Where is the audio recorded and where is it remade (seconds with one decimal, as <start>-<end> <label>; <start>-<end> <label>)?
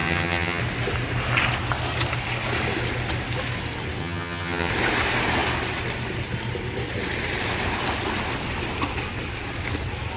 0.0-0.6 remade; 0.6-4.0 recorded; 4.0-4.7 remade; 4.7-10.2 recorded